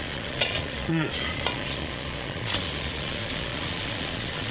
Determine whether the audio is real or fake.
fake